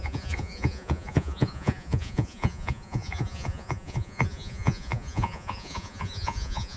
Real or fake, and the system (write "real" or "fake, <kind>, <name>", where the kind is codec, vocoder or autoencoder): fake, vocoder, Vocos